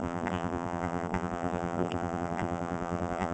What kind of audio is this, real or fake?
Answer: fake